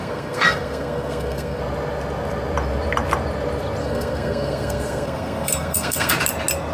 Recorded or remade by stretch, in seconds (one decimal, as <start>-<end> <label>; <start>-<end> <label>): 0.0-1.6 remade; 1.6-3.8 recorded; 3.8-6.1 remade; 6.1-6.7 recorded